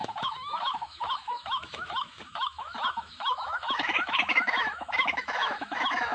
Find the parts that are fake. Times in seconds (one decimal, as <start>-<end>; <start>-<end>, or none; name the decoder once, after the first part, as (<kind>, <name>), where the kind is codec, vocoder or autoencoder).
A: 0.0-6.1 (autoencoder, DAC-VAE)